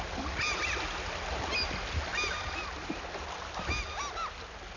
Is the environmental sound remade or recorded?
recorded